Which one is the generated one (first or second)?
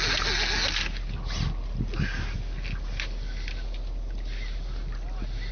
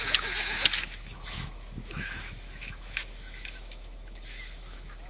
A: second